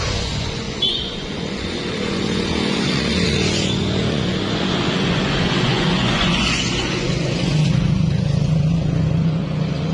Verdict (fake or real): fake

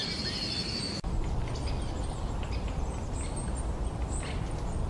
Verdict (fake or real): real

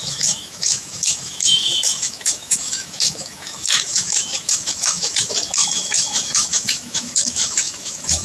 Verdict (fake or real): fake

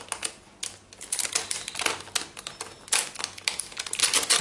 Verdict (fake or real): real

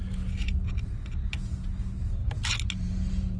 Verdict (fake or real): real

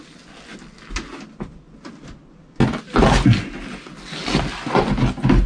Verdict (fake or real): real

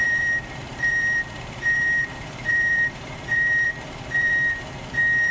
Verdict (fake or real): fake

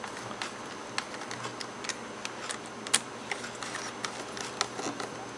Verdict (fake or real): real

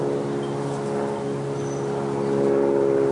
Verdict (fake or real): real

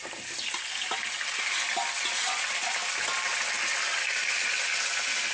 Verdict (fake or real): real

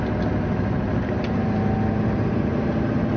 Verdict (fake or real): real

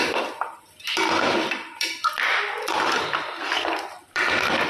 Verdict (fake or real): fake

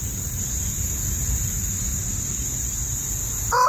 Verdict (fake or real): real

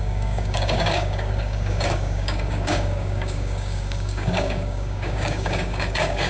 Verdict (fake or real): fake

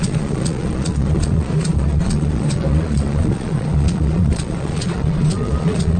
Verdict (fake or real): fake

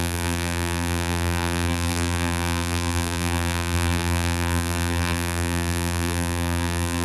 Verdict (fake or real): fake